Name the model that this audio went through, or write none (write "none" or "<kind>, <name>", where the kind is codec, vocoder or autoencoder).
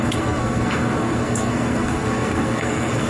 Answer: codec, SNAC